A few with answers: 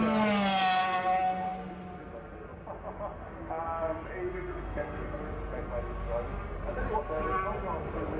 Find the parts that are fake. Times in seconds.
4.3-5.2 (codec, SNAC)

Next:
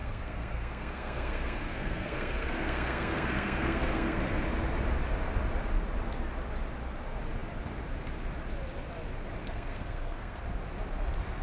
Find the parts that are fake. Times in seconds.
0.0-4.2 (codec, SNAC); 9.4-10.4

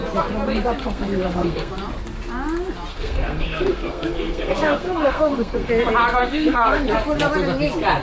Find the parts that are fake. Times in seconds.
0.8-1.7 (codec, SNAC); 2.9-5.7; 6.2-6.9

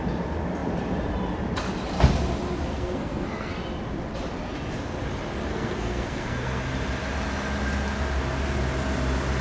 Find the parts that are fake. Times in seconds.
2.7-3.5 (codec, SNAC); 5.5-6.6

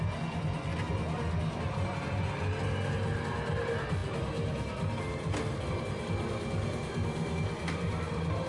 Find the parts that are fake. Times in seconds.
none